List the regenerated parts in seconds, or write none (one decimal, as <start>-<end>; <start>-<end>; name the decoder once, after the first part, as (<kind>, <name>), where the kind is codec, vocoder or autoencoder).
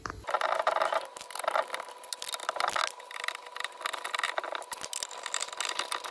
none